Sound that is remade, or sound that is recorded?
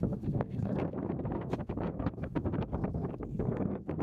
remade